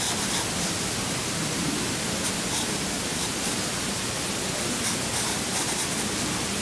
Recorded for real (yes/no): yes